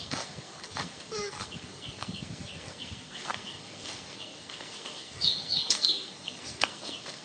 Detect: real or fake fake